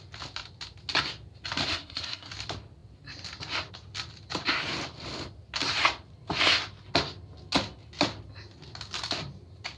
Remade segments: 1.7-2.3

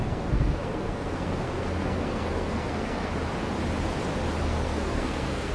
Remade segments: 0.0-3.1; 4.4-5.5

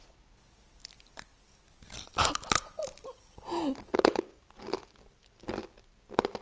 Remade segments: 3.9-4.4

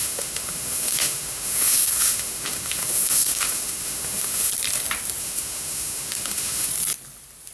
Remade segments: 0.0-4.5; 5.2-6.7

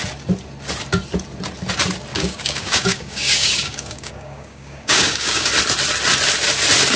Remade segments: 2.1-5.5

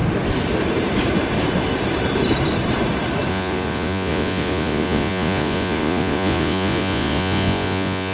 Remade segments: 3.3-8.1

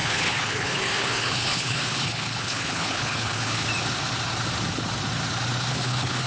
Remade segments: 0.0-3.7; 5.7-6.3

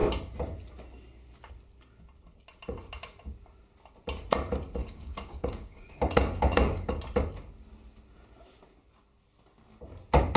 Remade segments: 4.8-7.0